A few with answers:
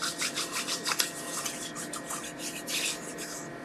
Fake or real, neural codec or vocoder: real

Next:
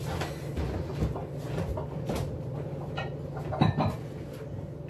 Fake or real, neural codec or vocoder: real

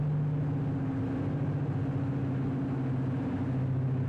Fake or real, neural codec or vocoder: real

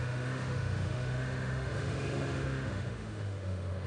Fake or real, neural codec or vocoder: fake, autoencoder, DAC-VAE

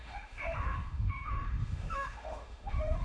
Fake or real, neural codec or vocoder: fake, autoencoder, DAC-VAE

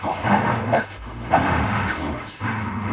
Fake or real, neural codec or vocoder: fake, autoencoder, DAC-VAE